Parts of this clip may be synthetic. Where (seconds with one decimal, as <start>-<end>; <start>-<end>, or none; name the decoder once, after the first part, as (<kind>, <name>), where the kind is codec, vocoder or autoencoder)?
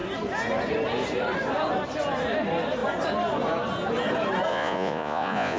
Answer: 4.5-5.6 (vocoder, Vocos)